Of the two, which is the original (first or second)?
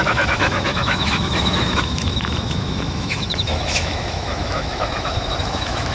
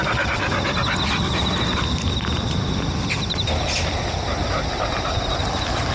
second